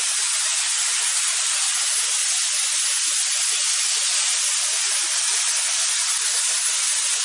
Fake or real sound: real